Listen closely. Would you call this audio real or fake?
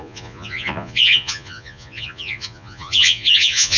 fake